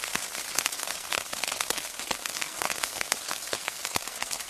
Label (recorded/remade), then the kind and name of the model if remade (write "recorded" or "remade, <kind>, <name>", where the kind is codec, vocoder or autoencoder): remade, codec, SNAC